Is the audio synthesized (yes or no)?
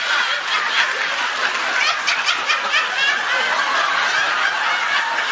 no